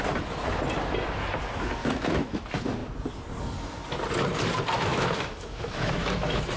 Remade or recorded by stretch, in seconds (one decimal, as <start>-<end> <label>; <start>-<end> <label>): 0.0-1.8 recorded; 1.8-2.4 remade; 2.4-4.9 recorded; 4.9-6.6 remade